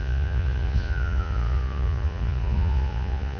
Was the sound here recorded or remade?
remade